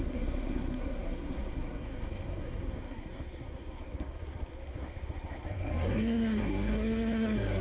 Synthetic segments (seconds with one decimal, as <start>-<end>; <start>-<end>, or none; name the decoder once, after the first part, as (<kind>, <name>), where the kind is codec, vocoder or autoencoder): 0.0-7.6 (codec, SNAC)